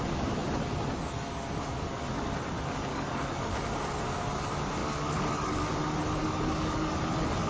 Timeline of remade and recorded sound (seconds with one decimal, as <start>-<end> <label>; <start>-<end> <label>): 0.0-2.9 recorded; 2.9-3.5 remade; 3.5-4.8 recorded; 4.8-5.7 remade; 5.7-6.2 recorded; 6.2-7.0 remade; 7.0-7.5 recorded